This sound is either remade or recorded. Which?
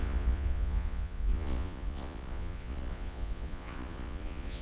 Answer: remade